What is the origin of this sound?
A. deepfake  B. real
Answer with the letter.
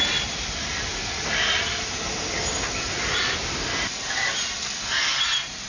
B